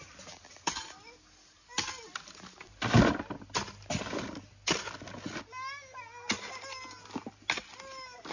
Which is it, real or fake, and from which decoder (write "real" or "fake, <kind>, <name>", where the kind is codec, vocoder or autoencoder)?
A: real